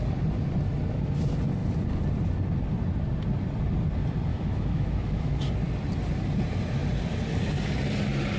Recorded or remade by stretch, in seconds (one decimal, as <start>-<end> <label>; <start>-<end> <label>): 0.0-4.3 recorded; 4.3-5.5 remade; 5.5-8.4 recorded